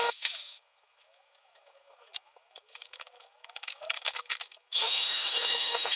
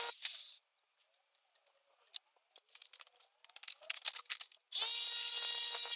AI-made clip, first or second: first